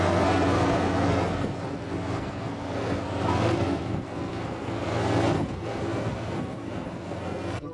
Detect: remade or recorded remade